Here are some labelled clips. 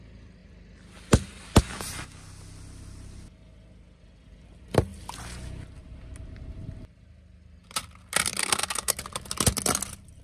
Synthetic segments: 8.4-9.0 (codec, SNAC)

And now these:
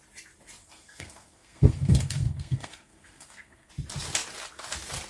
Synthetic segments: 0.6-3.7 (codec, SNAC)

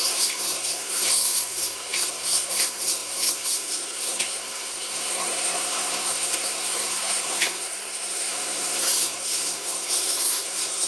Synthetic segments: 0.0-10.9 (codec, SNAC)

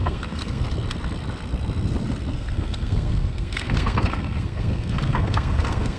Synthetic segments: 0.0-0.6 (codec, SNAC); 2.3-6.0

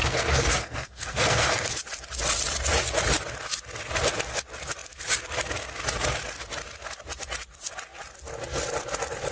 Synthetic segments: 0.0-1.7 (codec, SNAC)

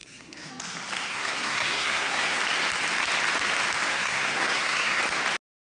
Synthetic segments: 0.0-0.5 (codec, SNAC); 1.1-2.4; 3.9-5.0